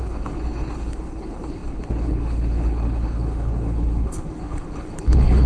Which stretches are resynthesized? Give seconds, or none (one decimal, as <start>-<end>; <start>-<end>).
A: 0.0-5.5